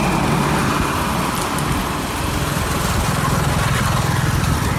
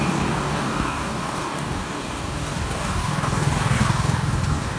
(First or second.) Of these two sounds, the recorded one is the first